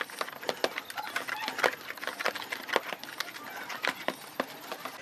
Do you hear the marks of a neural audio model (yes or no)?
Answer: no